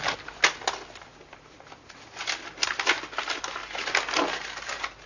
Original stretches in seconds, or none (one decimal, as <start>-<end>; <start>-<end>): 0.0-5.1